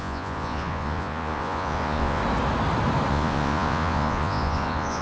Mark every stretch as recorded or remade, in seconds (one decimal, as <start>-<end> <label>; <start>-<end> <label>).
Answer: 0.0-2.2 remade; 2.2-3.1 recorded; 3.1-5.0 remade